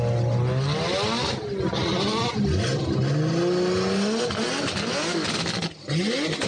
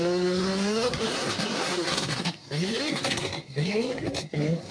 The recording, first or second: first